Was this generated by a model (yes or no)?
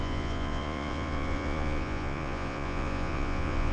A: yes